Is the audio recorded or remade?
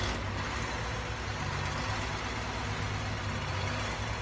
recorded